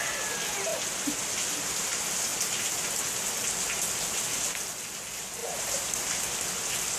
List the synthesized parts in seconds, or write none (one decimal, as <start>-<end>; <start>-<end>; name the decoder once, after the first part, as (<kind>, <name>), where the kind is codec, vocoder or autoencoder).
2.3-3.0 (vocoder, BigVGAN v2); 5.4-6.2